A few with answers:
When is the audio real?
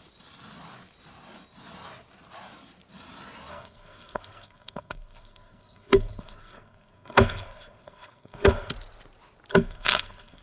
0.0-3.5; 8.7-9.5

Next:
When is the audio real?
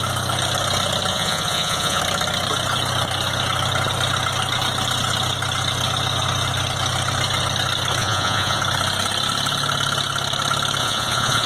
0.0-1.1; 2.0-8.0; 8.6-10.8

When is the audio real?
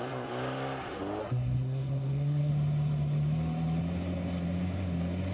0.0-1.2; 2.5-5.3